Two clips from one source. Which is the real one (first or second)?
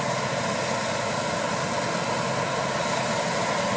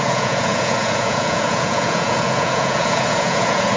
first